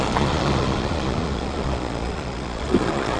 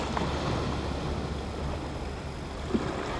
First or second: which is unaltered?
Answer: second